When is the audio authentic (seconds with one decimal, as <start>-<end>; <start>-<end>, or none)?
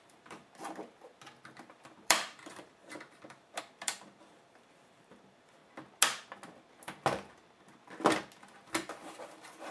0.4-1.6; 5.6-8.9